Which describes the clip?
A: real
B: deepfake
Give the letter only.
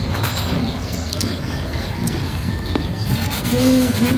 B